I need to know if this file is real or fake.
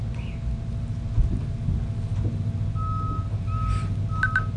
real